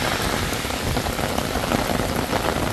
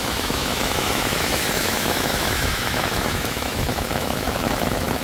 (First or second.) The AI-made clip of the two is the second